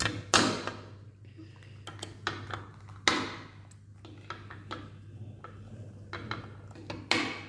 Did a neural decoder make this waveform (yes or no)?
no